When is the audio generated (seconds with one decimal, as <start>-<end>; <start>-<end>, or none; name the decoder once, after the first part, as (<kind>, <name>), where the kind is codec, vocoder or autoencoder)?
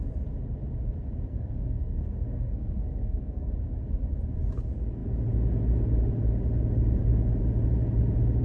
1.3-3.5 (codec, SNAC)